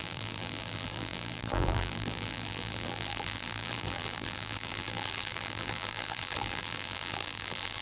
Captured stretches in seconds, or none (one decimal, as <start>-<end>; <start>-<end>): none